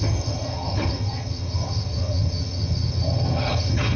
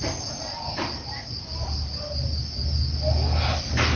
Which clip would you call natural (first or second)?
second